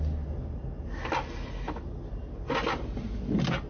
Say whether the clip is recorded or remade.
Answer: recorded